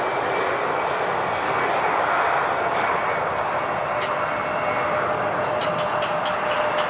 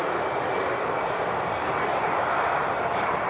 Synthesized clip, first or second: second